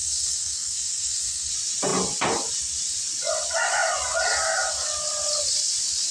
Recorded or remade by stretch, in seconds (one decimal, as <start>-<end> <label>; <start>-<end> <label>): 0.0-1.5 remade; 1.5-6.1 recorded